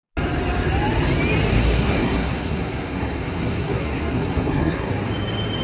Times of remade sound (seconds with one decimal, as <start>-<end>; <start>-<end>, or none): 1.5-4.9